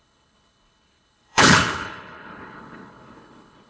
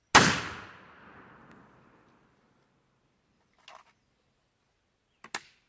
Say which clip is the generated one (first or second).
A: first